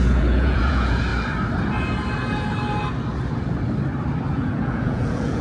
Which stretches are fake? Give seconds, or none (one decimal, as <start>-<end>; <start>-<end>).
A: 0.0-1.1; 4.3-5.4